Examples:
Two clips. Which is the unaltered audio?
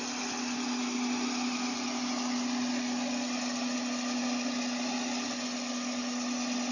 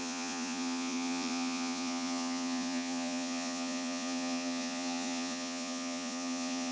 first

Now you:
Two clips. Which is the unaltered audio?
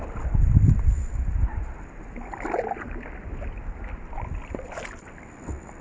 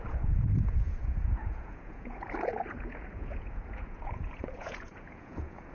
first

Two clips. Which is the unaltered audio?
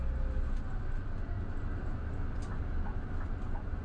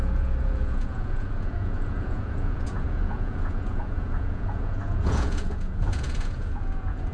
first